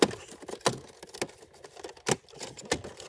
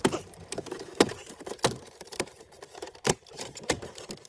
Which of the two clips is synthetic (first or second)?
second